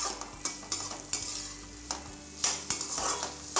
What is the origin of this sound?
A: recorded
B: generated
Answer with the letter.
A